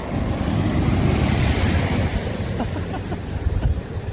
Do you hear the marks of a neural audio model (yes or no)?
no